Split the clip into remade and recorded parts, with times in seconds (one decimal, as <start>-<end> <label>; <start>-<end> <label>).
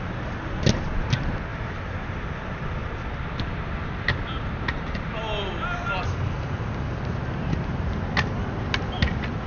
0.0-9.5 recorded